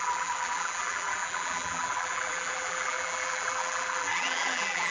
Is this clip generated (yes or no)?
yes